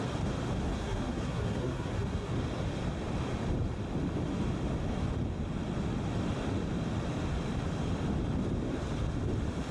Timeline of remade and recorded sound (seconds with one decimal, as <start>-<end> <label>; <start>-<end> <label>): 0.0-0.6 recorded; 0.6-2.3 remade; 2.3-9.7 recorded